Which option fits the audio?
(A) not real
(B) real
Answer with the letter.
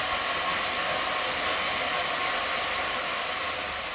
B